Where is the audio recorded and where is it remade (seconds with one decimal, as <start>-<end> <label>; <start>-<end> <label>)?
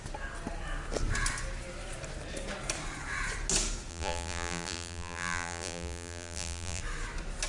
0.0-3.9 recorded; 3.9-6.8 remade; 6.8-7.5 recorded